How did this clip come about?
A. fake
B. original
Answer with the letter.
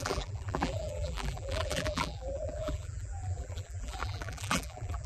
A